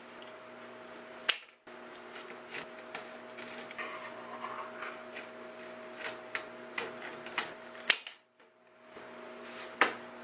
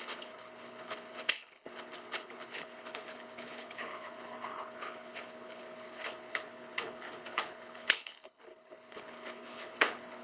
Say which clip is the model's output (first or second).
second